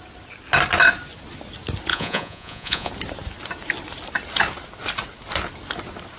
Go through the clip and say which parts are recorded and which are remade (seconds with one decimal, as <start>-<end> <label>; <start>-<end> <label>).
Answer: 0.0-1.9 recorded; 1.9-2.9 remade; 2.9-6.2 recorded